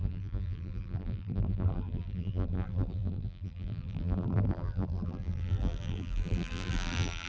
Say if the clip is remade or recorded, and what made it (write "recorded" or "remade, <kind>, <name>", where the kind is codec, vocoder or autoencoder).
remade, vocoder, BigVGAN v2